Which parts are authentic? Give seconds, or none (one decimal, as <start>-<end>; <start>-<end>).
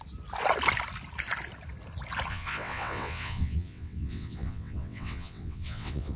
0.0-2.3